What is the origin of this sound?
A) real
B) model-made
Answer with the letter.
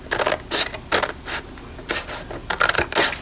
A